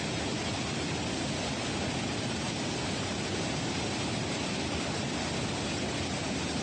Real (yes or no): yes